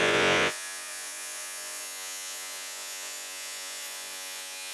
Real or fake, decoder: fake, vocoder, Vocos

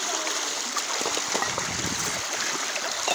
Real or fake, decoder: real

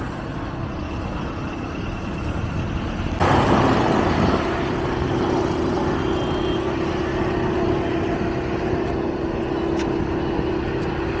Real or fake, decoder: real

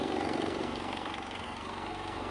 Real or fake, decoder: fake, codec, SNAC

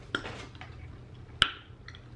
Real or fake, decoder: real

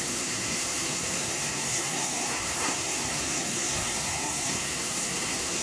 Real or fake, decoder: fake, codec, SNAC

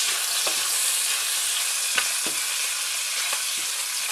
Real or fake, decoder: real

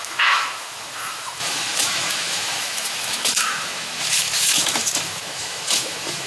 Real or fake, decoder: fake, autoencoder, DAC-VAE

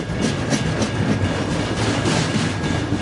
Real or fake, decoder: real